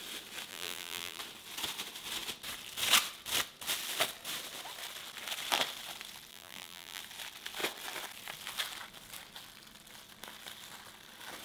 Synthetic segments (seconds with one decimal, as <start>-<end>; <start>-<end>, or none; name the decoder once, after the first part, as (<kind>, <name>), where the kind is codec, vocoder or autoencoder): 0.5-1.2 (vocoder, BigVGAN v2); 6.3-7.0